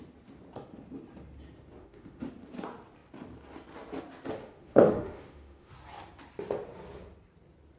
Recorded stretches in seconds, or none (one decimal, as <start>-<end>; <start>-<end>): 0.0-1.8; 2.3-4.4; 5.7-7.8